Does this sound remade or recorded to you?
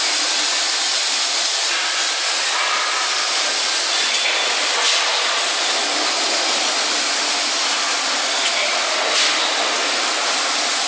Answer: recorded